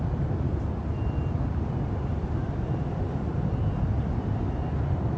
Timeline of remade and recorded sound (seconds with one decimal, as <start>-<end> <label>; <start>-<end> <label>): 0.0-5.2 recorded